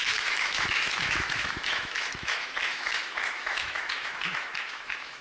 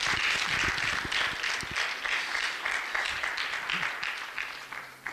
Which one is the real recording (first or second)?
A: second